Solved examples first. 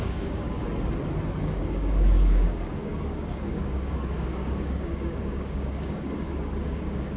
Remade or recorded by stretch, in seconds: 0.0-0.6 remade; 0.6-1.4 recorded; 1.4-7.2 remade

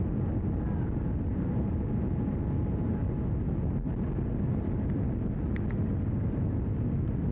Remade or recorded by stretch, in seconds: 0.0-7.3 recorded

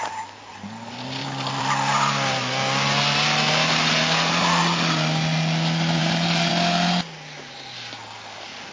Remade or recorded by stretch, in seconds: 0.0-1.2 recorded; 1.2-1.7 remade; 1.7-6.0 recorded; 6.0-6.5 remade; 6.5-8.7 recorded

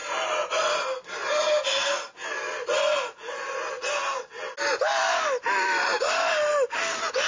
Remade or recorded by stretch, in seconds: 0.0-7.3 recorded

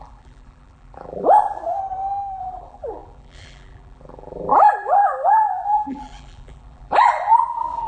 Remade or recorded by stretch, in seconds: 0.0-1.6 remade; 1.6-2.4 recorded; 2.4-7.9 remade

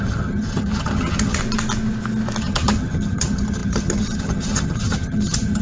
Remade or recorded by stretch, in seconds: 0.0-1.4 remade; 1.4-2.4 recorded; 2.4-5.6 remade

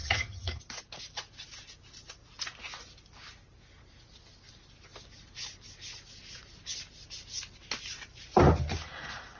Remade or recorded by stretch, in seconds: 0.0-0.6 remade; 0.6-9.4 recorded